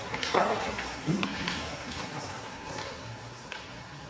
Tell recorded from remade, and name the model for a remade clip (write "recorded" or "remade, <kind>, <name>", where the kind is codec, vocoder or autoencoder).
remade, codec, SNAC